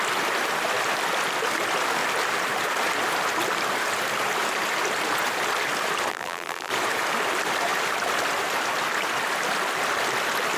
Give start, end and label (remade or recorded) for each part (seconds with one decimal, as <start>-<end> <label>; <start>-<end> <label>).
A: 0.0-6.1 recorded; 6.1-6.7 remade; 6.7-10.6 recorded